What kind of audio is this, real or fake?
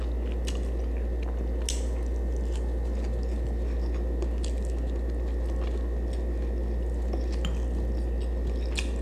real